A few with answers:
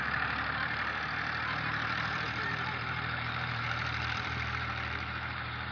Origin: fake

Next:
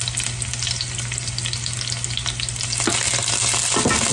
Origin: real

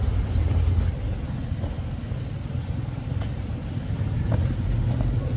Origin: real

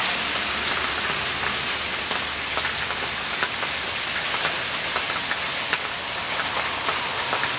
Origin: real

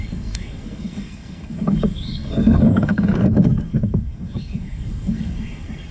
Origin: fake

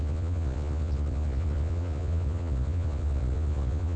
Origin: fake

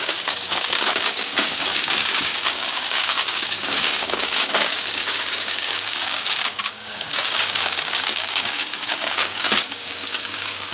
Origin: fake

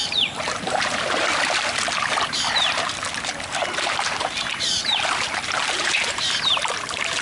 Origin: fake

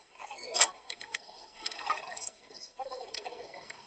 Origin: fake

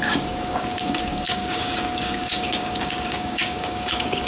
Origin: fake